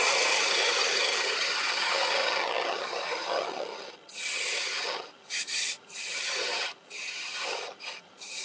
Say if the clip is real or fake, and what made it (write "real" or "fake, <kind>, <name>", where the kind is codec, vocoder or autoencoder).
fake, vocoder, HiFi-GAN